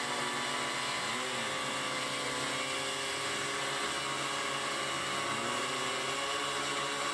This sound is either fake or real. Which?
real